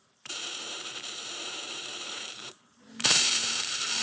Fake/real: fake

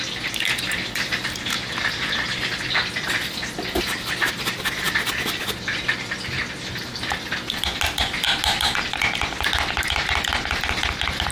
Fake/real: real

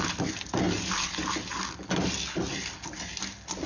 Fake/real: real